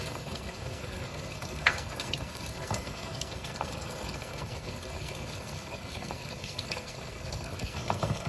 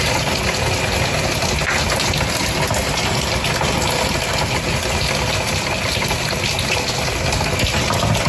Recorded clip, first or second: second